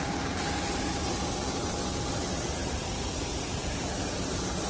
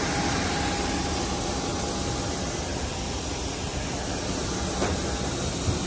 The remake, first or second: first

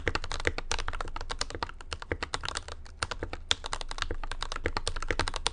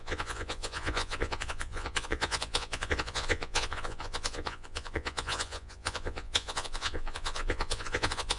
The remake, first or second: second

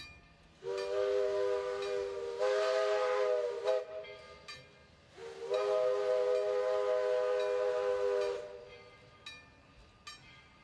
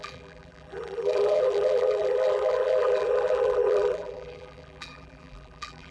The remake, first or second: second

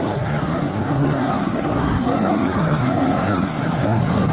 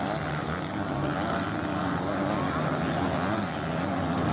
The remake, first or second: first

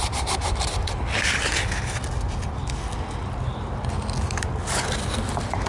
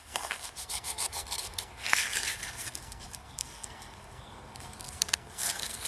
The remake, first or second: second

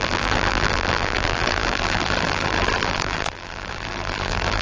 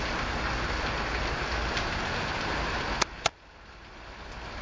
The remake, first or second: first